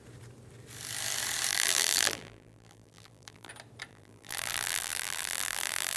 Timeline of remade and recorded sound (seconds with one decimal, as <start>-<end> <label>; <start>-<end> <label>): 0.0-1.5 recorded; 1.5-3.5 remade; 3.5-3.9 recorded; 3.9-6.0 remade